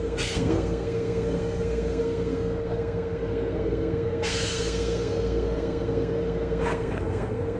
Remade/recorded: remade